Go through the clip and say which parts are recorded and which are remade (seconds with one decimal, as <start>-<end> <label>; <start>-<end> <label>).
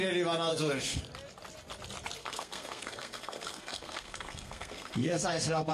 0.0-0.5 recorded; 0.5-1.0 remade; 1.0-2.2 recorded; 2.2-5.7 remade